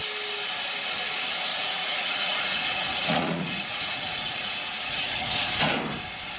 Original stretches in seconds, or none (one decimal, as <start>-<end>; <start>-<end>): 0.0-1.5; 5.3-6.4